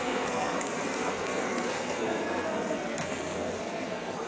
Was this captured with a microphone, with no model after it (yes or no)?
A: no